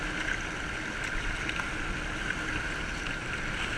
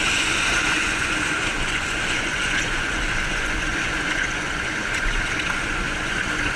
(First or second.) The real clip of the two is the first